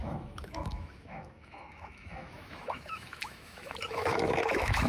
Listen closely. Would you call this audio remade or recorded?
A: remade